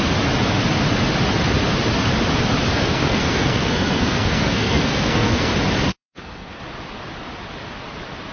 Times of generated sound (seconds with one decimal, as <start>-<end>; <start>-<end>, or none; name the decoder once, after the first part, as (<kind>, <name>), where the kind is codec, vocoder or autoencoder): 2.7-5.5 (codec, SNAC); 5.9-6.6